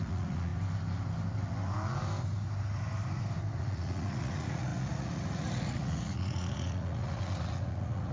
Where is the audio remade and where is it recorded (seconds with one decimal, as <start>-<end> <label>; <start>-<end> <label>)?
0.0-0.5 remade; 0.5-3.6 recorded; 3.6-8.1 remade